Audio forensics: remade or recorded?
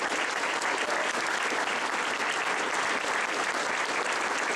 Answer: recorded